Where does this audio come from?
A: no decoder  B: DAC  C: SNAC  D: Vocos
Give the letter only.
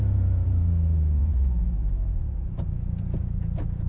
D